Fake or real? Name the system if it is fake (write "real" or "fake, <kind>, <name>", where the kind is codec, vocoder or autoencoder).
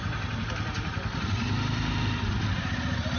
real